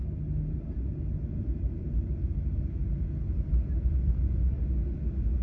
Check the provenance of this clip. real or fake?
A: real